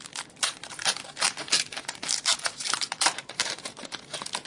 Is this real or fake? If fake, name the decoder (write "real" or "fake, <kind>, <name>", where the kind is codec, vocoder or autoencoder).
fake, vocoder, BigVGAN v2